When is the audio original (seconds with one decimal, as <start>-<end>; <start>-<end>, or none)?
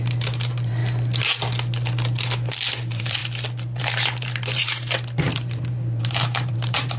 0.8-2.7; 3.2-3.8